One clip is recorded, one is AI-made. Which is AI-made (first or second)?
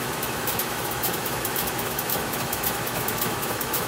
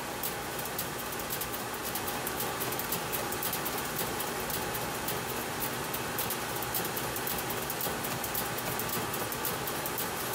first